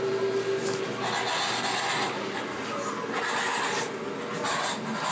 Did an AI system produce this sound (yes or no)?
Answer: no